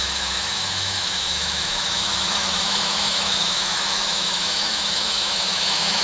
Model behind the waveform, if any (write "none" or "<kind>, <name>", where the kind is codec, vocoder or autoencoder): autoencoder, DAC-VAE